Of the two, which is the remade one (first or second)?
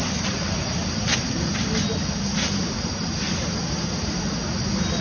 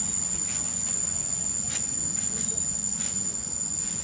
second